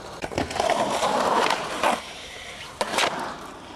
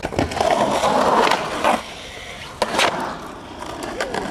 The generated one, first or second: first